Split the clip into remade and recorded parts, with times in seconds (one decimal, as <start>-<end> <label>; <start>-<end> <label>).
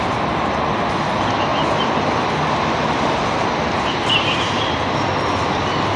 0.0-6.0 recorded